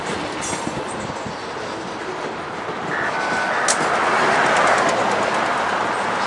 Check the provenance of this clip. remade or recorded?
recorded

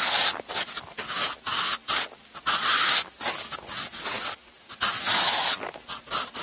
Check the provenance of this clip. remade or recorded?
recorded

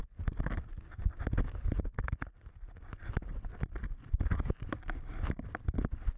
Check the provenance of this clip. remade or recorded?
recorded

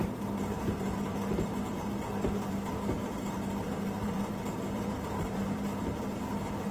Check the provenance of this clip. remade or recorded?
remade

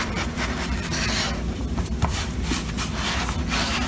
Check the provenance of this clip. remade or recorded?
remade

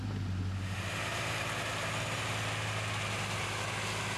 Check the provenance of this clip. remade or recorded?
recorded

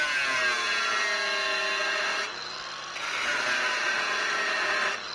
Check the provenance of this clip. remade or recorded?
recorded